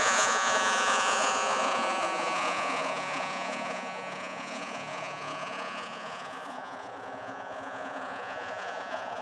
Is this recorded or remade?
remade